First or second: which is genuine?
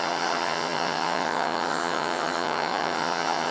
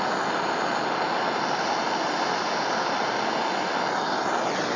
second